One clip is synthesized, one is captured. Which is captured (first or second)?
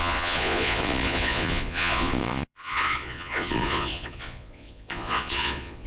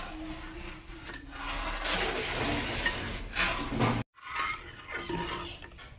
second